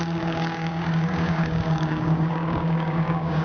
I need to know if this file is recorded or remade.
remade